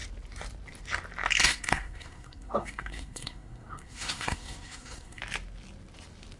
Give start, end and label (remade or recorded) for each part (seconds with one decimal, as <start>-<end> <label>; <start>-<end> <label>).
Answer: 0.0-1.4 recorded; 1.4-5.2 remade; 5.2-6.4 recorded

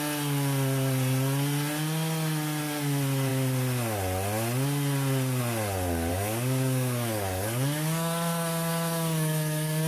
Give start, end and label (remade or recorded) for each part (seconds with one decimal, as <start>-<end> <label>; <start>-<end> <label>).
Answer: 0.0-6.1 recorded; 6.1-9.9 remade

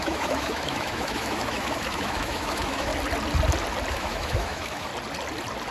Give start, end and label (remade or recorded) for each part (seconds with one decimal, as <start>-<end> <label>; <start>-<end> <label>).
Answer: 0.0-2.9 remade; 2.9-3.9 recorded; 3.9-4.9 remade; 4.9-5.7 recorded

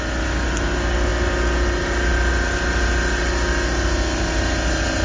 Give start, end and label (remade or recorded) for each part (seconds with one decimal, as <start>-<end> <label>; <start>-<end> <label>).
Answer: 0.0-5.0 recorded

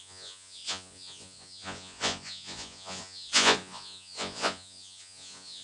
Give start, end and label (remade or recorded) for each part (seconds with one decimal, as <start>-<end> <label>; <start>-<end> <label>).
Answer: 0.0-5.6 remade

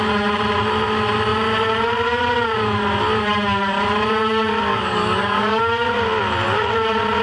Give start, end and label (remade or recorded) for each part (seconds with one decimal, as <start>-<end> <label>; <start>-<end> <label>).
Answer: 0.0-4.7 recorded; 4.7-5.6 remade; 5.6-7.2 recorded